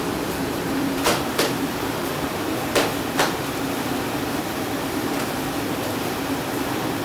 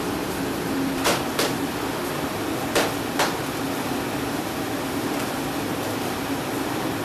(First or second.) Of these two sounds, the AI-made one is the first